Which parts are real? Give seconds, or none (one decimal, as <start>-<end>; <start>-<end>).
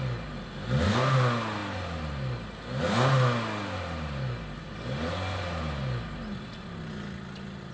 0.0-7.7